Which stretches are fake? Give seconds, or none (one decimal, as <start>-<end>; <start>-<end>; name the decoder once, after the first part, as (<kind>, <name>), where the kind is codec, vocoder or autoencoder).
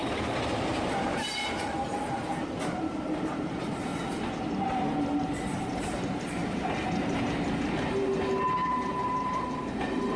0.5-3.9 (vocoder, BigVGAN v2); 5.6-6.4; 9.7-10.2